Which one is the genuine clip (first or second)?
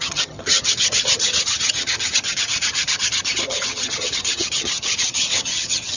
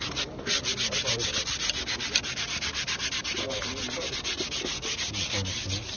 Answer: second